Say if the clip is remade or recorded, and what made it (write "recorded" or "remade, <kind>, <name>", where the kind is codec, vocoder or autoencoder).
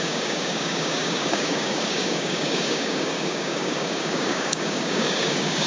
remade, codec, DAC